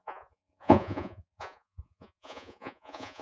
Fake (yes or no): yes